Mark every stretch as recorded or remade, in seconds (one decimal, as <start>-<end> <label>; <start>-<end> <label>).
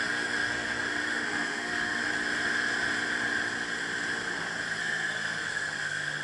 0.0-2.1 remade; 2.1-4.8 recorded; 4.8-6.2 remade